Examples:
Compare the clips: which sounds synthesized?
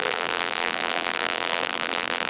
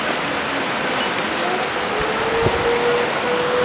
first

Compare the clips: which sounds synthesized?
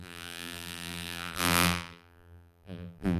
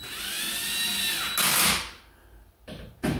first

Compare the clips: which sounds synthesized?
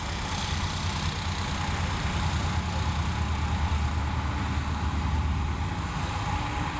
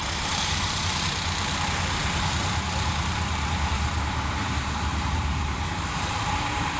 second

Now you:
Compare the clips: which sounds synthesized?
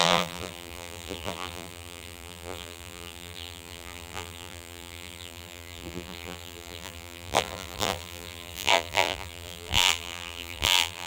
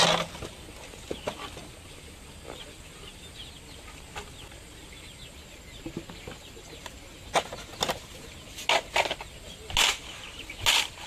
first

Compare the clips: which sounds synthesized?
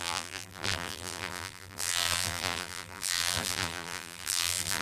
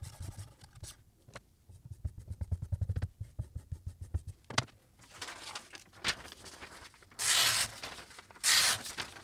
first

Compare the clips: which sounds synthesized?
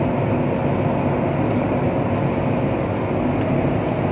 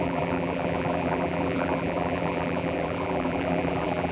second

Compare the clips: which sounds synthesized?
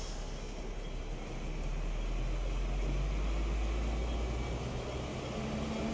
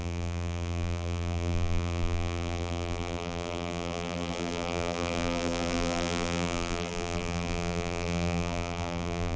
second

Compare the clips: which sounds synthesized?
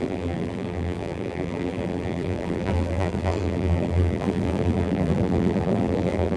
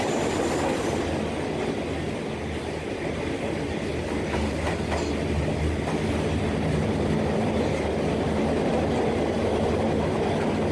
first